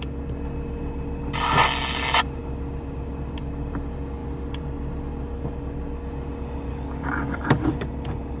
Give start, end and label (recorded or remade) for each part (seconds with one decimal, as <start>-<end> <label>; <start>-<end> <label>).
0.0-6.7 recorded; 6.7-7.7 remade; 7.7-8.4 recorded